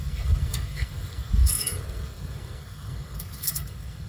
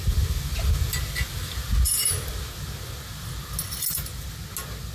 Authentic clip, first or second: second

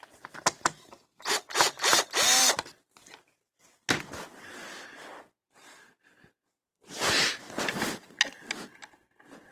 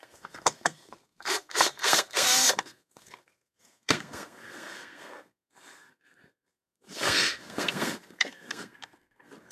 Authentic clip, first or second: first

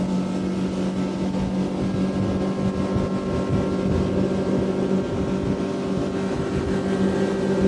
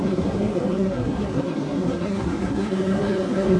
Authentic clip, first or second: first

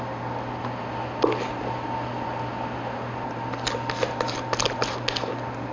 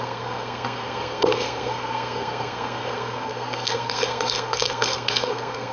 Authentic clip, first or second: first